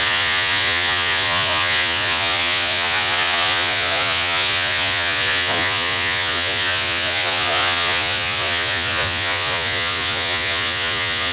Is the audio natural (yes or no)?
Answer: no